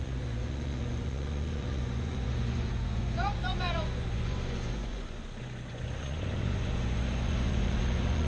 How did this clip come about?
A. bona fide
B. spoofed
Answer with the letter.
B